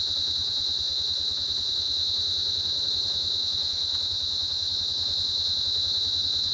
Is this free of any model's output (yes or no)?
no